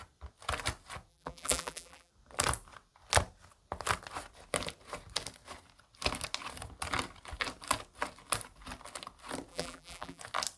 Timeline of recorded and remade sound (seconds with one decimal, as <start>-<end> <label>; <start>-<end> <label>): 0.0-1.1 recorded; 1.1-2.1 remade; 2.1-9.5 recorded; 9.5-10.2 remade; 10.2-10.6 recorded

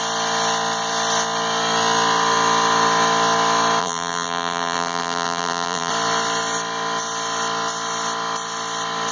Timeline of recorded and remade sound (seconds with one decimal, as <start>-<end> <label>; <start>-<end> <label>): 0.0-3.8 recorded; 3.8-5.9 remade; 5.9-9.1 recorded